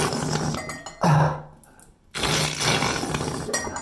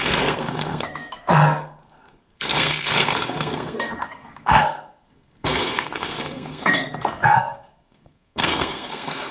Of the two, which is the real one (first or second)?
first